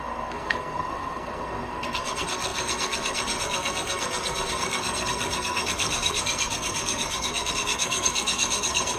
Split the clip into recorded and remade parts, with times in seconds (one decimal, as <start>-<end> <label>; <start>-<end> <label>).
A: 0.0-9.0 remade